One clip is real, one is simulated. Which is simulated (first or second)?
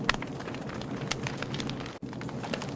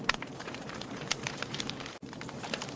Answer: second